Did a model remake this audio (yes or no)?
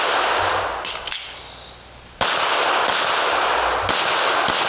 no